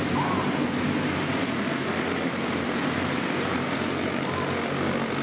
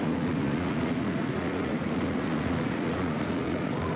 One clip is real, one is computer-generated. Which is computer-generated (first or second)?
second